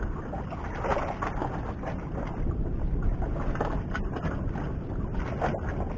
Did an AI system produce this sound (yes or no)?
no